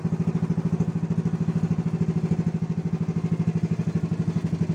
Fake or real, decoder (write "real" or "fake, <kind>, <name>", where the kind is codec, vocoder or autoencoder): real